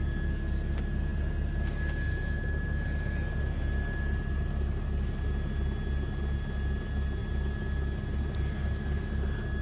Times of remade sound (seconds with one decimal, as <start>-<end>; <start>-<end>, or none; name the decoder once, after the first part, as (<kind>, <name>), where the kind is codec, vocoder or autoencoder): none